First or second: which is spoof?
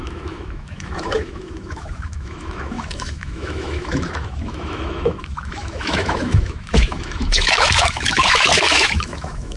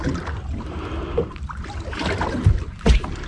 first